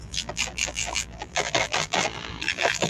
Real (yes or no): no